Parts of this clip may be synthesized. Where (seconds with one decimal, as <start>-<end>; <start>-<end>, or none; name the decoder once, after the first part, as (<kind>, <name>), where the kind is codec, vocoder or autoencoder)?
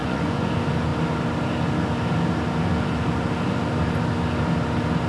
0.0-0.5 (vocoder, Vocos)